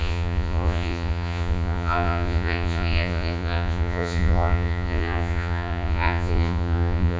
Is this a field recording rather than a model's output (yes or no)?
no